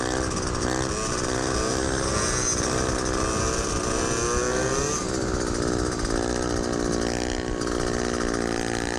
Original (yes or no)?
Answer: yes